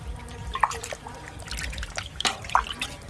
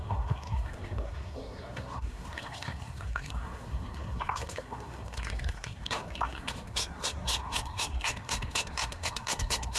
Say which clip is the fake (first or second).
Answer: second